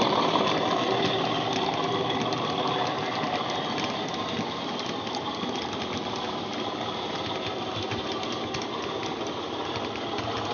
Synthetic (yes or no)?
no